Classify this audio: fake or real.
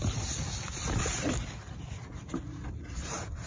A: real